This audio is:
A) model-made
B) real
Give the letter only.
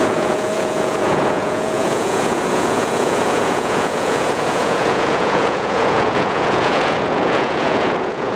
A